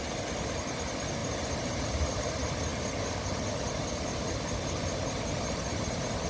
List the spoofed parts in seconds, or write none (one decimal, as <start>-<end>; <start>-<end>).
1.2-2.2